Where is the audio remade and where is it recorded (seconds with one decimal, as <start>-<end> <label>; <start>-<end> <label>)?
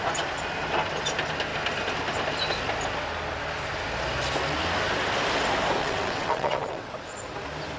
0.0-5.8 recorded; 5.8-6.9 remade; 6.9-7.8 recorded